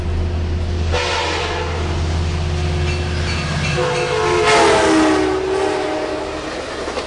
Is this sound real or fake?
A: real